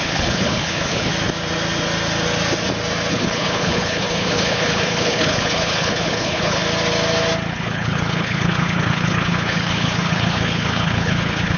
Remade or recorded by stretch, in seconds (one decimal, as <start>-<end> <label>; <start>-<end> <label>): 0.0-1.1 remade; 1.1-3.1 recorded; 3.1-6.6 remade; 6.6-7.5 recorded; 7.5-11.6 remade